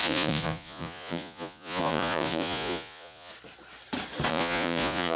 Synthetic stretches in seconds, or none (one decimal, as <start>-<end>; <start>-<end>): 0.0-3.3; 4.3-5.2